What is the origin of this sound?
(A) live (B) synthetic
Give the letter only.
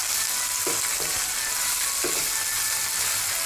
A